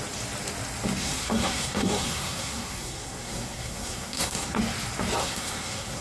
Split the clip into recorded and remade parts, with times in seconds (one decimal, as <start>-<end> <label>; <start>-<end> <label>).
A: 0.0-1.0 recorded; 1.0-4.6 remade; 4.6-5.2 recorded; 5.2-6.0 remade